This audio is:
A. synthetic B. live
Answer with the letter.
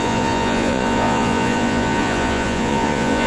A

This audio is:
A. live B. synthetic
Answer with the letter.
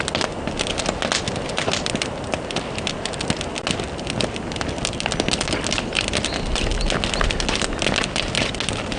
A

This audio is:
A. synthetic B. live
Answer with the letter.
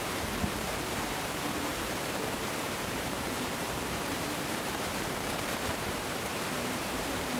A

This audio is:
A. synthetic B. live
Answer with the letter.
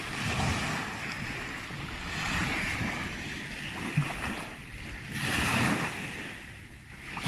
B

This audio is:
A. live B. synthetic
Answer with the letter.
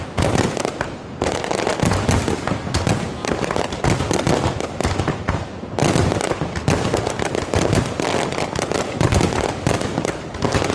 A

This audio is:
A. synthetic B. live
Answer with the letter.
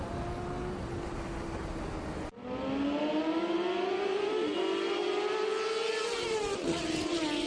B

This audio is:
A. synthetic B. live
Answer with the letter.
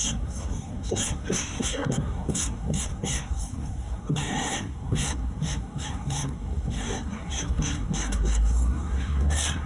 A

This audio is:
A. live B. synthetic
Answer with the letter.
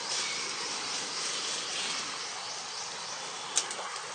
A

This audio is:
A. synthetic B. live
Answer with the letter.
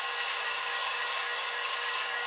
A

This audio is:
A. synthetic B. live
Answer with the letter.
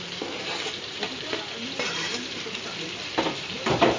A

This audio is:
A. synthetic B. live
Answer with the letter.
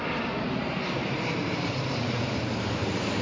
A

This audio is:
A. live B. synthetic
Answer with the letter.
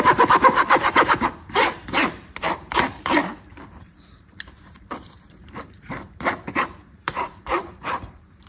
B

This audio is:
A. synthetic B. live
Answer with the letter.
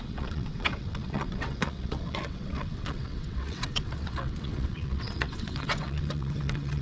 A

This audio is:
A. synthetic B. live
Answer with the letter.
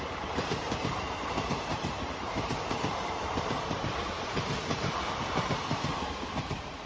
A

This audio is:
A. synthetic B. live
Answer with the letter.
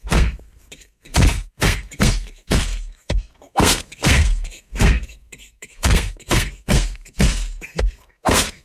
A